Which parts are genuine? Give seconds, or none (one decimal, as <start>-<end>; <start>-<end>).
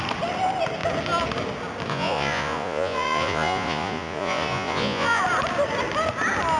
0.0-1.9; 5.2-6.6